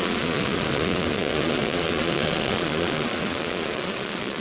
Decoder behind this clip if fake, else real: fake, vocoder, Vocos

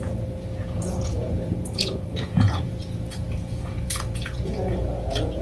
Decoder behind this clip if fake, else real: fake, vocoder, Vocos